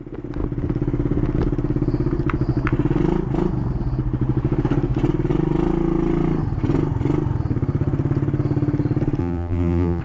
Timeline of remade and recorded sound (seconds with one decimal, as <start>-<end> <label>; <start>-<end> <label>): 0.0-9.2 recorded; 9.2-10.0 remade